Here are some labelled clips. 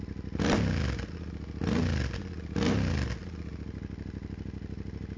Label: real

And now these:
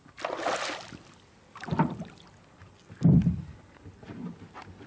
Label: real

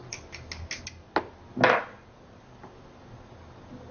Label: real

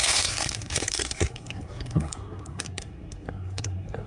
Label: fake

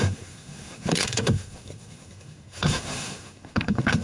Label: fake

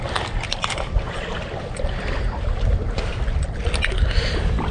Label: real